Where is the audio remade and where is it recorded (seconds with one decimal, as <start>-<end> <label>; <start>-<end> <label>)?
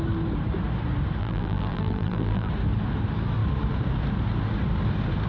0.0-1.2 recorded; 1.2-2.5 remade; 2.5-5.3 recorded